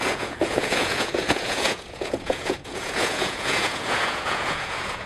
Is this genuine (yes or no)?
no